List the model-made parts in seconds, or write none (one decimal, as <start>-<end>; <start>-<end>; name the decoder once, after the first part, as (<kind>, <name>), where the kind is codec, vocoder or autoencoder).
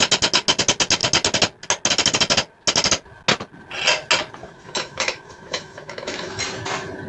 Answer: 4.4-6.4 (autoencoder, DAC-VAE)